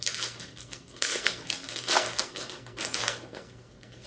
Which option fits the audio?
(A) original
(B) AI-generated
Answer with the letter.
B